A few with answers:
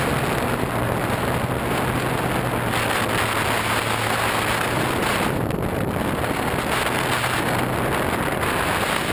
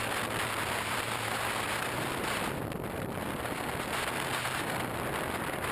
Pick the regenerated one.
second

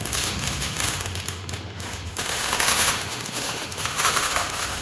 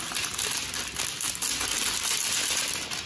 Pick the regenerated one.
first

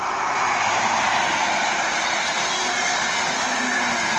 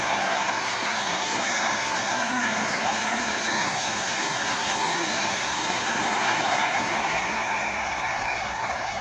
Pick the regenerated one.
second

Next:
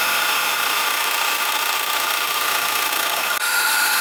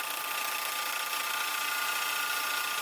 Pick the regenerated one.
first